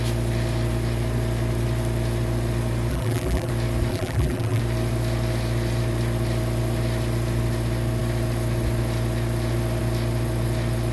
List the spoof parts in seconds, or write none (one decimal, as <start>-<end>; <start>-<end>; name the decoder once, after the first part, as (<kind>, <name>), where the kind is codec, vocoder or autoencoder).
2.9-3.5 (vocoder, BigVGAN v2); 3.9-4.6